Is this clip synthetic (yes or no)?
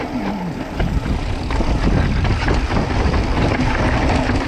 no